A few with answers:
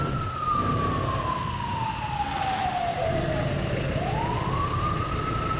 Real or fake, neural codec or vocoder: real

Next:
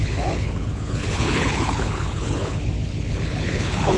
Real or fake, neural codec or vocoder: fake, codec, HILCodec